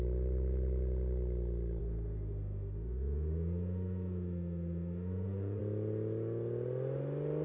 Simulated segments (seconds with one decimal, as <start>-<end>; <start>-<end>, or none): 1.8-5.6